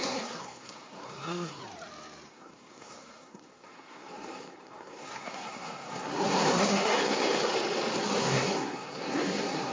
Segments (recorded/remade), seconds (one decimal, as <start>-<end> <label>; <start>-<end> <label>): 0.0-1.6 remade; 1.6-2.3 recorded; 2.3-7.5 remade; 7.5-8.0 recorded; 8.0-9.7 remade